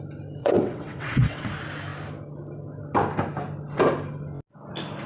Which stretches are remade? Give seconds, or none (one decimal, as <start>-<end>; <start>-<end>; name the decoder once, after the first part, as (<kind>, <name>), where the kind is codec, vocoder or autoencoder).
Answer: 0.4-1.5 (vocoder, WaveNeXt)

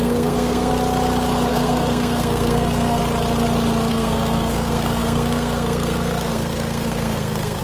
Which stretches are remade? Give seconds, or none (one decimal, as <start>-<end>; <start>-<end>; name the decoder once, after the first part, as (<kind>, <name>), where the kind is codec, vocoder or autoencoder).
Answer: 0.0-0.7 (codec, SNAC); 1.5-3.0; 3.9-7.6

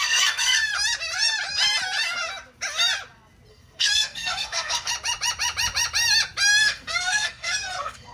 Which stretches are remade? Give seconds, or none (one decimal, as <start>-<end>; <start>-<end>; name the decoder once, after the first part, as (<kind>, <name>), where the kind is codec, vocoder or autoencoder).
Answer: 0.0-0.7 (codec, SNAC); 3.5-4.9; 6.6-8.1

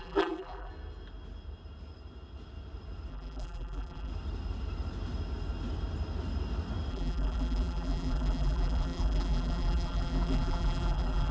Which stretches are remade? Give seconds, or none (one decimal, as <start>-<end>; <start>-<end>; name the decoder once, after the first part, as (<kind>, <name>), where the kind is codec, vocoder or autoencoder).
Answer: 0.0-0.7 (vocoder, BigVGAN v2); 3.1-4.1; 6.9-11.3

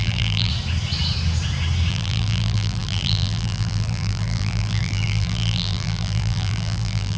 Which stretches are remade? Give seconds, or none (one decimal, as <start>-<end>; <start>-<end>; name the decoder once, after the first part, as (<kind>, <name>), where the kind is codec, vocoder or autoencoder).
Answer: 0.0-0.5 (vocoder, BigVGAN v2); 1.9-7.2

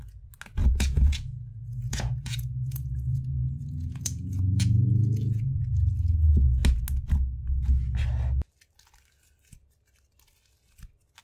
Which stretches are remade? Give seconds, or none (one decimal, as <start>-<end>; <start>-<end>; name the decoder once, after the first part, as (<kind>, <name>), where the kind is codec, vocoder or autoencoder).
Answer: 0.6-5.6 (vocoder, Vocos)